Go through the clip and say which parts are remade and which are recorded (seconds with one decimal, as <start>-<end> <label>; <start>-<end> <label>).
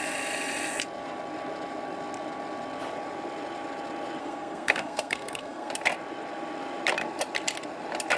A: 0.0-4.2 recorded; 4.2-5.7 remade; 5.7-8.2 recorded